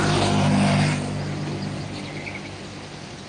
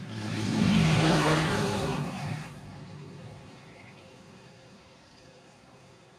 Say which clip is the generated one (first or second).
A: second